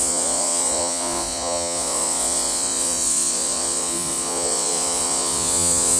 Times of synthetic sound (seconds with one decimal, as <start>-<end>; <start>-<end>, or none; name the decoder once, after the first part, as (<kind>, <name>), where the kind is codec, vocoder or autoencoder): 0.0-6.0 (vocoder, Vocos)